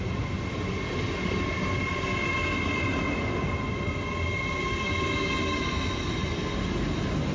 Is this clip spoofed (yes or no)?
no